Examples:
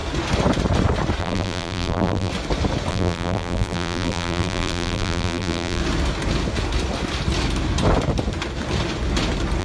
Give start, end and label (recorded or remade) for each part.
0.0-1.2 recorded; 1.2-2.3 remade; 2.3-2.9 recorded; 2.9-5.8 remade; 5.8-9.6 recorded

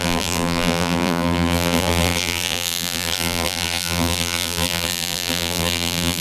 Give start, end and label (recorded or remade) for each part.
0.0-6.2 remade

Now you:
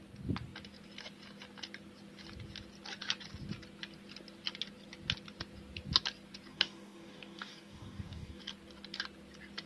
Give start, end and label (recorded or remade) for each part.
0.0-6.5 recorded; 6.5-8.4 remade; 8.4-9.7 recorded

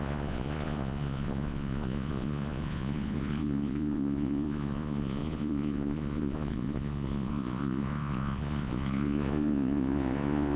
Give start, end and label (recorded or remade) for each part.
0.0-10.6 remade

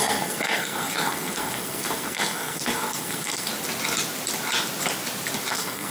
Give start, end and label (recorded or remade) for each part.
0.0-3.5 remade; 3.5-5.5 recorded; 5.5-5.9 remade